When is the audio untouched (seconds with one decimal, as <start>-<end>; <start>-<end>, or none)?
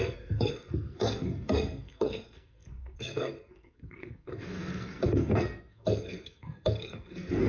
none